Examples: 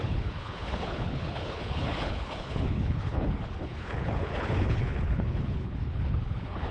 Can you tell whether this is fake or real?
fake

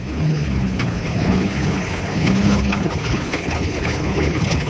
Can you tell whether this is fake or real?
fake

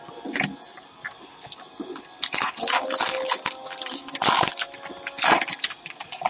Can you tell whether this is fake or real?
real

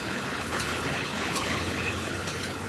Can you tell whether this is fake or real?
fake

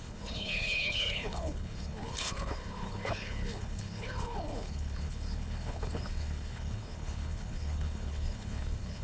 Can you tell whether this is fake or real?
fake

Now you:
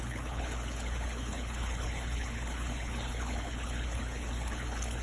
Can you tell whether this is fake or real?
fake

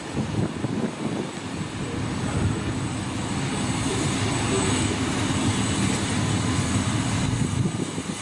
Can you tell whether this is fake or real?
real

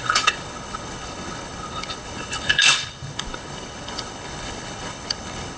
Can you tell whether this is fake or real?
fake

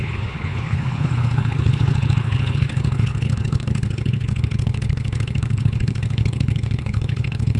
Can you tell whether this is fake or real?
fake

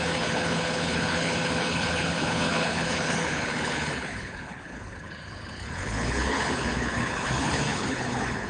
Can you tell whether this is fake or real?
fake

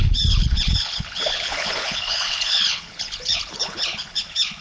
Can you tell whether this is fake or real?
fake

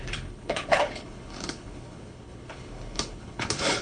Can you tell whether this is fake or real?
fake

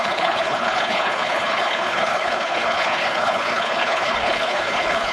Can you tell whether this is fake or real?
fake